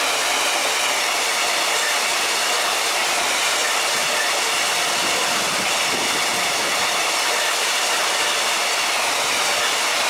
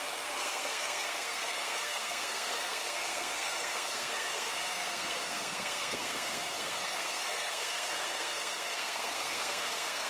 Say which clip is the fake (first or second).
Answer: second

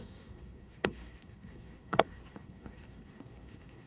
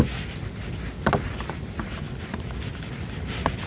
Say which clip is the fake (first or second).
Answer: first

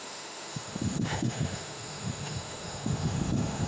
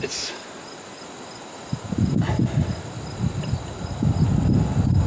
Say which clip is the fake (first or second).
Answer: first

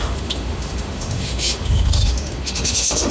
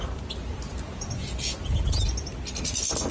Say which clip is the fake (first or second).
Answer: first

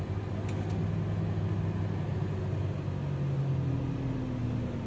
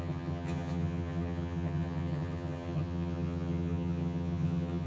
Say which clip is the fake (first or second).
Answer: second